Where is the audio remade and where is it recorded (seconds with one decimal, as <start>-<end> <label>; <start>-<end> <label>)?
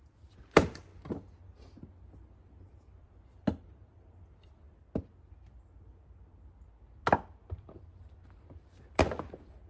0.0-7.4 recorded; 7.4-9.0 remade; 9.0-9.7 recorded